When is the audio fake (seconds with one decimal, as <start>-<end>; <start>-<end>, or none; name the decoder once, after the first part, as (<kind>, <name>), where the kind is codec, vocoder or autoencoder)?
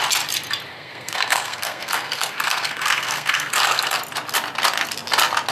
0.7-4.0 (codec, SNAC)